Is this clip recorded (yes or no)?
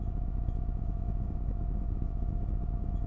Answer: no